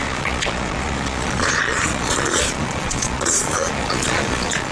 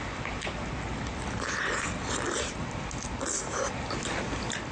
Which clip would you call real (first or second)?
second